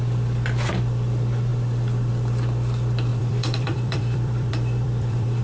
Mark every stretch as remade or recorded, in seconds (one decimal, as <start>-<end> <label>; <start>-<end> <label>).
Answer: 0.0-3.1 recorded; 3.1-5.4 remade